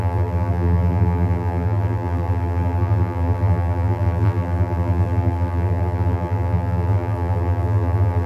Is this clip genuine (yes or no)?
no